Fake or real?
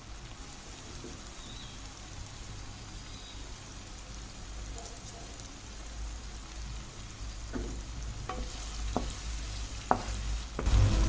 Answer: real